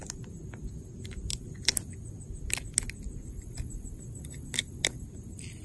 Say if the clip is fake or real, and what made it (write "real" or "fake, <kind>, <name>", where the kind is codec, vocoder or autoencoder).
real